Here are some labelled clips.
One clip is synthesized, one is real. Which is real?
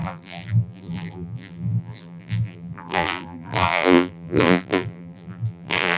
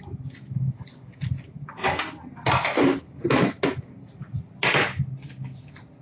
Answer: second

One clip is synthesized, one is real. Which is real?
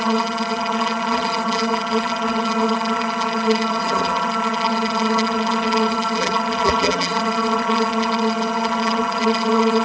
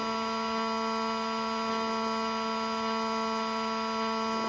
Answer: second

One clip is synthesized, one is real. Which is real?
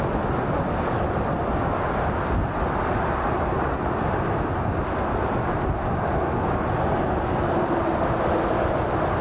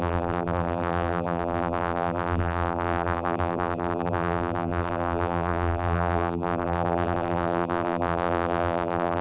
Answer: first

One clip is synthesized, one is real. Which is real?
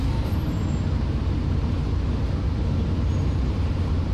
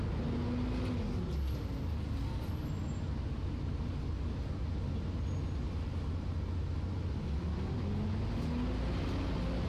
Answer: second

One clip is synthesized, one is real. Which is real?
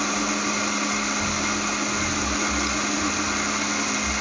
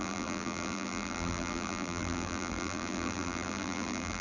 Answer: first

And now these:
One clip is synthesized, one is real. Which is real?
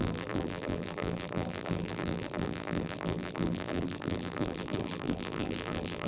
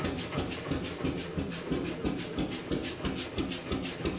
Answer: second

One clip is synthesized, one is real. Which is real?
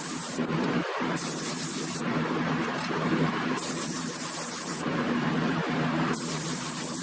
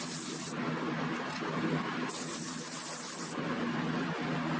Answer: second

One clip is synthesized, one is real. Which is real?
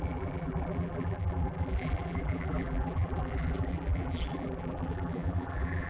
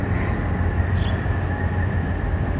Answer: second